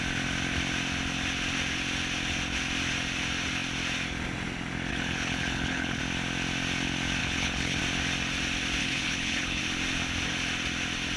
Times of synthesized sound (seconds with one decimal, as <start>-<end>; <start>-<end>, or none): 4.9-6.0; 7.2-7.8; 8.8-9.6